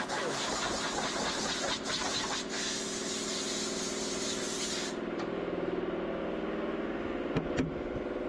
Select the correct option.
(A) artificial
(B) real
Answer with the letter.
B